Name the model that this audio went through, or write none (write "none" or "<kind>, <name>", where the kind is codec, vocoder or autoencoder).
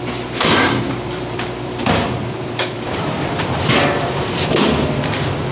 vocoder, BigVGAN v2